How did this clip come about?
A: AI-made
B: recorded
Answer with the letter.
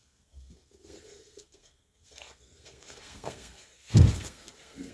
A